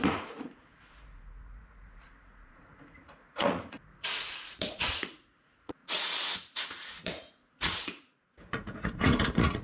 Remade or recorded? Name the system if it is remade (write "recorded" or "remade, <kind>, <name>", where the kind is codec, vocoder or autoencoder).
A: remade, vocoder, Vocos